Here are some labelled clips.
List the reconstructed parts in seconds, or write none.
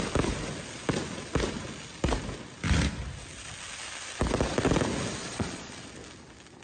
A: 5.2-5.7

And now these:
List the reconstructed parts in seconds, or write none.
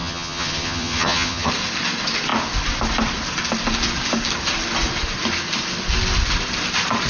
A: 0.0-1.5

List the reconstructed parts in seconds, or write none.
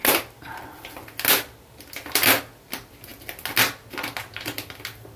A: none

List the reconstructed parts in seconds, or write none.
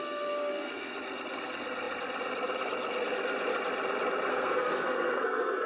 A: 0.0-0.9; 4.3-5.7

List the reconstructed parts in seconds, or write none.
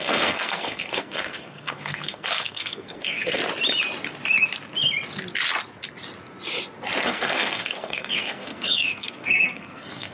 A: 0.0-3.4; 7.0-10.1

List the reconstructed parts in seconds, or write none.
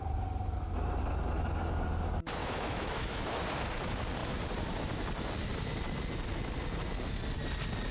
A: 2.4-3.4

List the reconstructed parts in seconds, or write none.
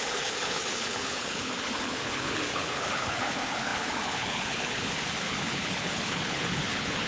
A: 0.0-7.1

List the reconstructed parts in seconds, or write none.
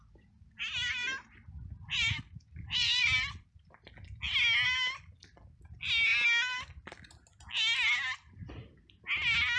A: 1.0-3.9